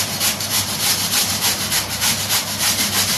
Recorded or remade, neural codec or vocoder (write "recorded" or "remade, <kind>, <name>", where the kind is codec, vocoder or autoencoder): recorded